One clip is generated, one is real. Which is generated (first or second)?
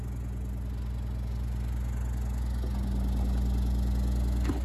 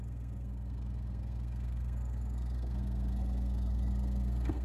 second